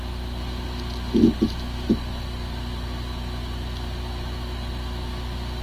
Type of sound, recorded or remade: recorded